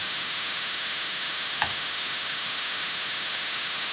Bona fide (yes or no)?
no